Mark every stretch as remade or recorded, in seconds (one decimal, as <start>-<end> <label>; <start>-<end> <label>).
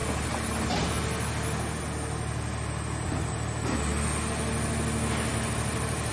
0.0-6.1 recorded